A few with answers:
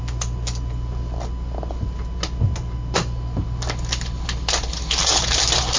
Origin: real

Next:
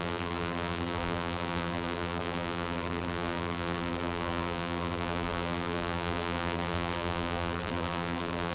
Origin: fake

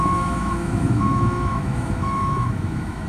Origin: fake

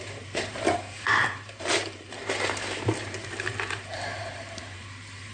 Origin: fake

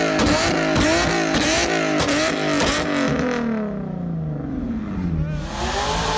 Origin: real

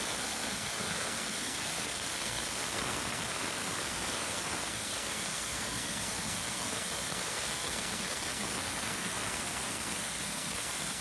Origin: fake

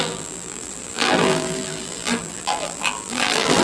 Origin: fake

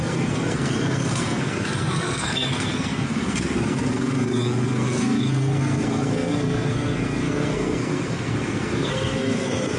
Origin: fake